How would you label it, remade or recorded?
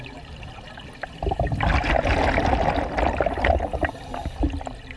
recorded